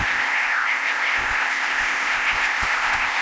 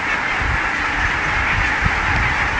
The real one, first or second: second